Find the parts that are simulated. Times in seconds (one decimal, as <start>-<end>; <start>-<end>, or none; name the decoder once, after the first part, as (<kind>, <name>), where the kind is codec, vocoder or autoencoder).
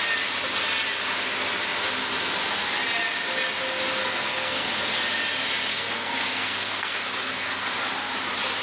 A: 4.0-4.7 (codec, SNAC); 5.7-7.7